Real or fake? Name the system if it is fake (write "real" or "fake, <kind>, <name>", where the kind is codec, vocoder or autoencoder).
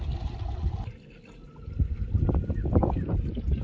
real